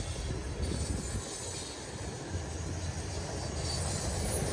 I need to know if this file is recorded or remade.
recorded